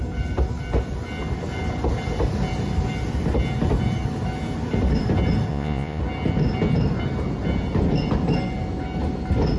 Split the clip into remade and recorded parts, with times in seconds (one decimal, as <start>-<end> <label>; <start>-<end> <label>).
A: 0.0-5.5 recorded; 5.5-6.0 remade; 6.0-9.6 recorded